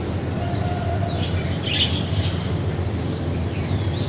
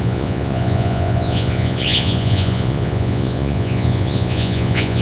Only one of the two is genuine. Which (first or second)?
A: first